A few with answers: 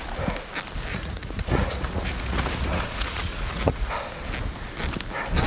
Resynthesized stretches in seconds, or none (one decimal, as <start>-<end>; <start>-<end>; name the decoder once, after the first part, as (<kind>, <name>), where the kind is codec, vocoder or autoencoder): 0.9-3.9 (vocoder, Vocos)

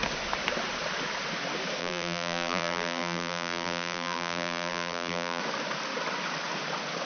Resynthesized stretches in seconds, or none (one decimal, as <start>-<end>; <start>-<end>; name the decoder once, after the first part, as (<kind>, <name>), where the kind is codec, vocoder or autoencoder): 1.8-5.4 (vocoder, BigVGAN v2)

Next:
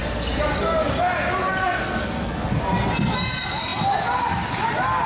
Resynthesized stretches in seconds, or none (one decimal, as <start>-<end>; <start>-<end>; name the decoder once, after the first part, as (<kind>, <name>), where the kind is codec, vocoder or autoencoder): 1.6-2.5 (codec, SNAC)

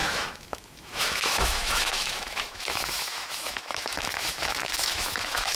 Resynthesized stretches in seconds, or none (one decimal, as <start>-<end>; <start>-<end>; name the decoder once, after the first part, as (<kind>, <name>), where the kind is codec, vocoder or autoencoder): 0.0-5.6 (autoencoder, DAC-VAE)

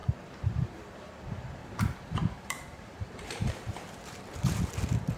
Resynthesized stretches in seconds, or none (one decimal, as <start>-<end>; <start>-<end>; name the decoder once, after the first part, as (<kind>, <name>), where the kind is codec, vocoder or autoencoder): 0.0-1.2 (vocoder, BigVGAN v2); 1.6-4.7